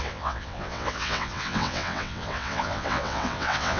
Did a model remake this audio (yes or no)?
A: yes